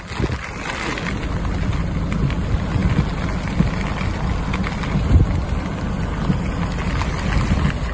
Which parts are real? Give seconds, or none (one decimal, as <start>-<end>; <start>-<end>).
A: 0.0-7.9

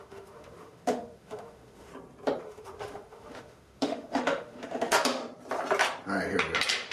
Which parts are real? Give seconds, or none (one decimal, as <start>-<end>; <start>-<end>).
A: 1.9-2.4; 5.2-6.9

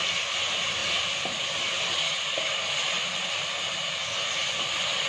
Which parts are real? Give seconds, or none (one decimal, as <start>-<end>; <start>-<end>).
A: 0.0-5.1